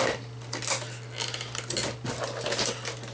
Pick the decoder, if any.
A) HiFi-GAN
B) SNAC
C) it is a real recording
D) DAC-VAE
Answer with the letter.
C